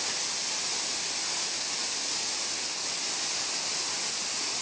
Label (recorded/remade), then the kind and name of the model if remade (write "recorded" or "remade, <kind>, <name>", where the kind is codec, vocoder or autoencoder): recorded